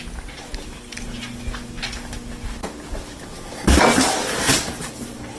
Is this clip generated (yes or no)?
no